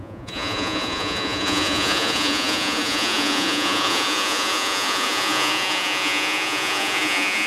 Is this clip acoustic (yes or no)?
no